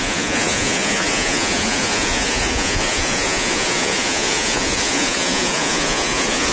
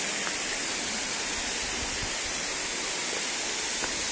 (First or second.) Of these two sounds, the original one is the second